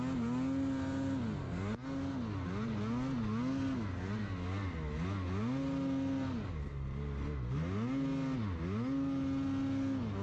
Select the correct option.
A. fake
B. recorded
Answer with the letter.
B